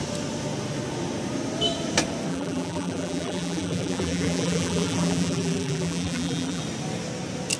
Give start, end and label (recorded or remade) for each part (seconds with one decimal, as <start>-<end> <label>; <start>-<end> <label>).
0.0-2.3 recorded; 2.3-6.6 remade; 6.6-7.6 recorded